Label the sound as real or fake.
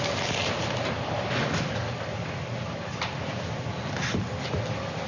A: real